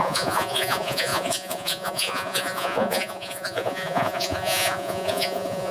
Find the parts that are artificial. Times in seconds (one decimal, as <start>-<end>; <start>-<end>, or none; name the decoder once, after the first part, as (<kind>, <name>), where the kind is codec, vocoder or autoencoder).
0.0-5.7 (vocoder, Vocos)

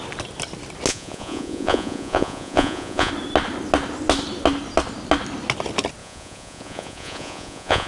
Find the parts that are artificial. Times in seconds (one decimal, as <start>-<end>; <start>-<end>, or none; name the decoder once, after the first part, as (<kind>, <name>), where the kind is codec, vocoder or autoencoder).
0.9-3.1 (vocoder, Vocos); 6.0-7.9

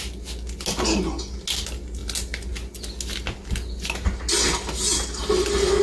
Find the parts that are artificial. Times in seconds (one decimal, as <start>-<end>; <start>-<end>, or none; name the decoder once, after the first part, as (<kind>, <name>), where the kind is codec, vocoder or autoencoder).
none

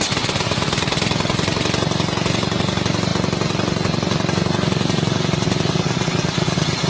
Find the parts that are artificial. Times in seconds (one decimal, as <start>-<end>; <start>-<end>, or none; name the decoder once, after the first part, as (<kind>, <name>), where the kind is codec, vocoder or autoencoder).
none

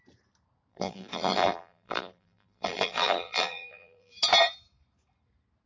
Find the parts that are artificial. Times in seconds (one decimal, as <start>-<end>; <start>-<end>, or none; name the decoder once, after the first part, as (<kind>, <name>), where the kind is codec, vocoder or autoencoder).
0.7-4.1 (vocoder, BigVGAN v2)

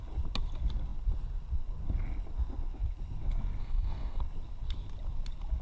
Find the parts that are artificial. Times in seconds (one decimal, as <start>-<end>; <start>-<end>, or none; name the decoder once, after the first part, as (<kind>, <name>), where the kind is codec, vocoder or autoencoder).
3.6-4.2 (codec, SNAC)